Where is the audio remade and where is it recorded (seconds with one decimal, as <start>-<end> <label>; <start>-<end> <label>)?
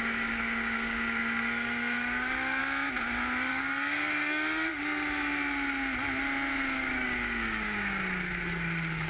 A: 0.0-2.6 remade; 2.6-3.5 recorded; 3.5-4.7 remade; 4.7-6.6 recorded; 6.6-9.1 remade